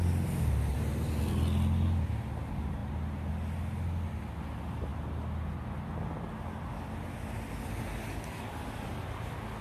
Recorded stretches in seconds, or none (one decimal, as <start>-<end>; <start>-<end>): 0.0-0.7; 1.2-9.6